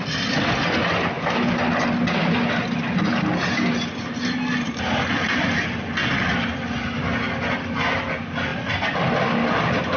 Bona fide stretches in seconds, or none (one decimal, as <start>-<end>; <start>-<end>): 0.0-10.0